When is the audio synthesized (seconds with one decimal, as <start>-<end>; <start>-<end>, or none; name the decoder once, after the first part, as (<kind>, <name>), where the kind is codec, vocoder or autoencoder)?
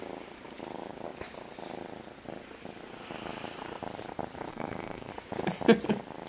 4.5-5.1 (codec, SNAC)